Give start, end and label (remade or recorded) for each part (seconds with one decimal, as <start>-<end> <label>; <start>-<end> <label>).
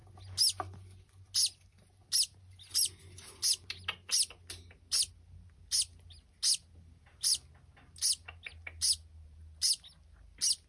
0.0-10.7 recorded